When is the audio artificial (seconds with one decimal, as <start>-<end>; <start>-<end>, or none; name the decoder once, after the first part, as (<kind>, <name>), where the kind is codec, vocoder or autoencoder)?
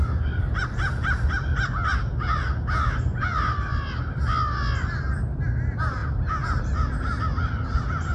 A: none